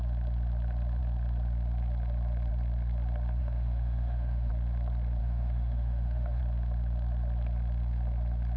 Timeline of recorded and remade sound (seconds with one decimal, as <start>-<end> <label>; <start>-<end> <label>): 0.0-3.4 recorded; 3.4-4.5 remade; 4.5-5.2 recorded; 5.2-6.4 remade; 6.4-8.6 recorded